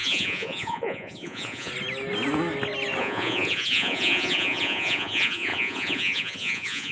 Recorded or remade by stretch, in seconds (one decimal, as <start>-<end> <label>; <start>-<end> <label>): 0.0-1.7 remade; 1.7-3.0 recorded; 3.0-6.9 remade